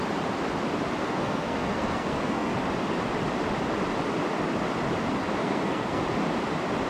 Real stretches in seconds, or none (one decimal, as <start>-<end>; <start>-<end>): 0.0-1.0; 2.5-5.4; 6.0-6.9